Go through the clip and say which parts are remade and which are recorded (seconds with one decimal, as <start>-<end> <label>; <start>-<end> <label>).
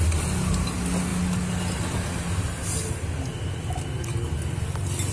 0.0-5.1 recorded